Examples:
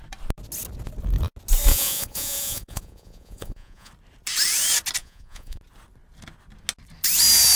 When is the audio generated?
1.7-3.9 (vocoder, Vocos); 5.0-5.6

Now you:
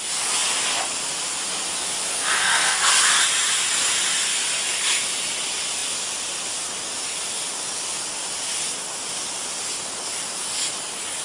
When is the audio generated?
2.1-2.9 (codec, SNAC)

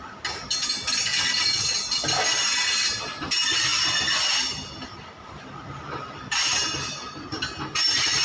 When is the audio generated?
none